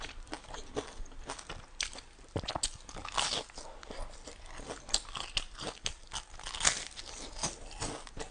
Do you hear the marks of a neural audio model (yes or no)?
no